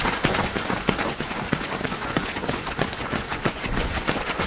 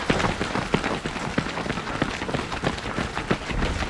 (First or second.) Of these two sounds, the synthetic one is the first